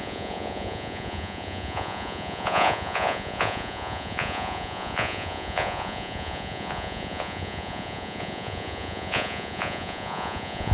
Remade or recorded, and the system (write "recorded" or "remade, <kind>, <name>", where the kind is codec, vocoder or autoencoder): remade, vocoder, Vocos